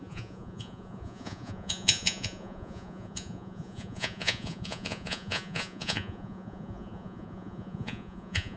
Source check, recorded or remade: remade